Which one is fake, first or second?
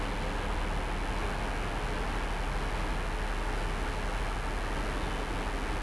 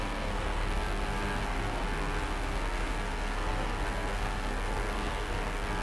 second